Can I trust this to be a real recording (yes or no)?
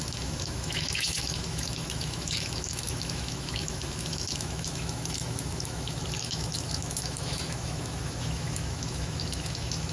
no